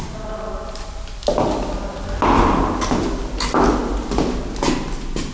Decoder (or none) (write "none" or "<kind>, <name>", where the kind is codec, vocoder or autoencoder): none